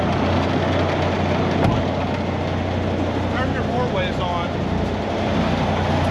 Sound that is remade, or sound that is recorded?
recorded